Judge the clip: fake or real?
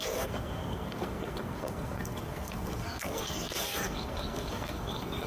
fake